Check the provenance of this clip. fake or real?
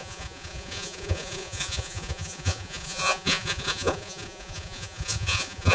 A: fake